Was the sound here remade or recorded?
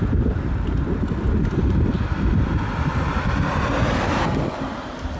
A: recorded